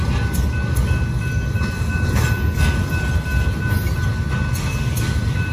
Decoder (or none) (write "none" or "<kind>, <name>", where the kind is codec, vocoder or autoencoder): none